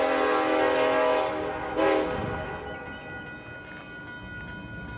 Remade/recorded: recorded